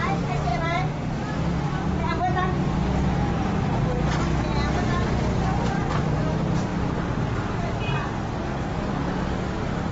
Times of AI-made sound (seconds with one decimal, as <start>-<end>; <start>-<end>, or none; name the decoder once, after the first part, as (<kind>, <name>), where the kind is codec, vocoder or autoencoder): 0.5-1.9 (vocoder, BigVGAN v2); 6.7-8.1